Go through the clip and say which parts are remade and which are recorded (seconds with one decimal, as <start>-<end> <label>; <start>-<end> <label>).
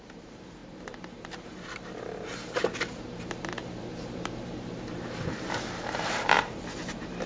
0.0-7.3 remade